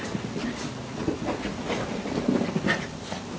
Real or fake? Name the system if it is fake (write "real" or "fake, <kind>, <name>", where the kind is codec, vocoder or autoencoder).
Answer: real